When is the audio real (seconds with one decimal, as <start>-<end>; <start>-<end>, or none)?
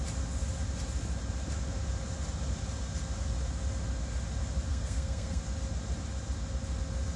0.0-4.7; 5.4-7.2